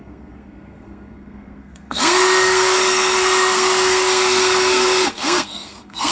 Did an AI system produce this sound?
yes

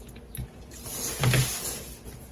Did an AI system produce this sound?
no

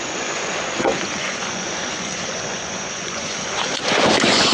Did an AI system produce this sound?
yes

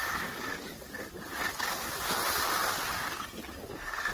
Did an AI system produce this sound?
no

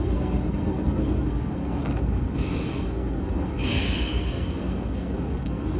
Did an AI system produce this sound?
yes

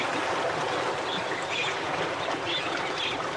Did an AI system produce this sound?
no